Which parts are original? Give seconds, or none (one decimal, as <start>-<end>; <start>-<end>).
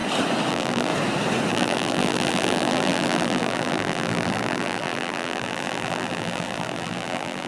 0.0-0.5; 0.9-1.5